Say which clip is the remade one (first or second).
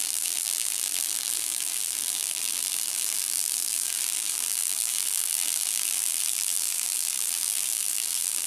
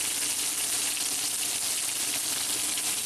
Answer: first